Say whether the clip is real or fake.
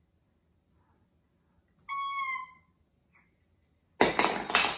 real